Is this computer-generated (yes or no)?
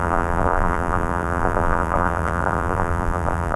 yes